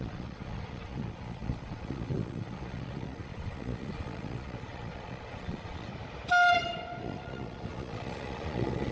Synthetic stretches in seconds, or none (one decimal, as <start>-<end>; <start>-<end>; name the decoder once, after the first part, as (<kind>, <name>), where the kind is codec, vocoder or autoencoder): 0.0-5.9 (vocoder, Vocos); 7.0-8.9